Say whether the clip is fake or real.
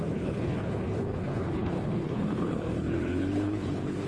fake